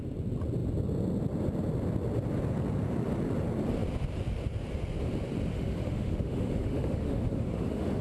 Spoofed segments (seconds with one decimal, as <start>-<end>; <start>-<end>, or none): 5.5-8.0